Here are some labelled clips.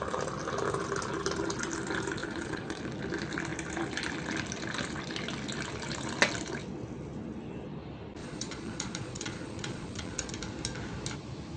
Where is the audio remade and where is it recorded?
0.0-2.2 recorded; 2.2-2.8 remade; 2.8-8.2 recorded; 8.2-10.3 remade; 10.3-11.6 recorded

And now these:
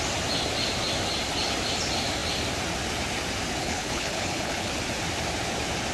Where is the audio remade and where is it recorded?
0.0-3.6 recorded; 3.6-4.7 remade; 4.7-5.9 recorded